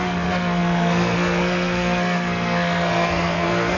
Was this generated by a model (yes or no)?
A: yes